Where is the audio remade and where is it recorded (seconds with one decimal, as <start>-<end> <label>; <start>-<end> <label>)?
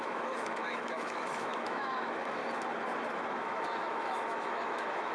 0.0-2.4 remade; 2.4-3.3 recorded; 3.3-5.1 remade